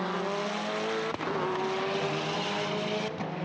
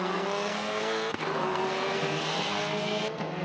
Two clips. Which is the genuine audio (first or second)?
first